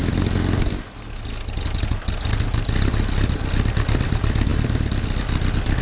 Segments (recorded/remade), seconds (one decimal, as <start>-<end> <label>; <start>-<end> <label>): 0.0-2.5 recorded; 2.5-5.8 remade